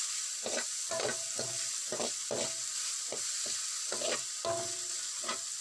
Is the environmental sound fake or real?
real